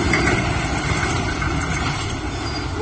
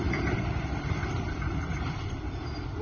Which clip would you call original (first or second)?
first